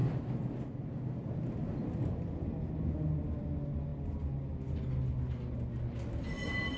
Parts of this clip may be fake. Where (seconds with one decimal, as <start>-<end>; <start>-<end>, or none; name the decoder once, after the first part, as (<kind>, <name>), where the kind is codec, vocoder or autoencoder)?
none